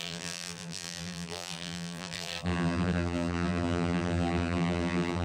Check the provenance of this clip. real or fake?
fake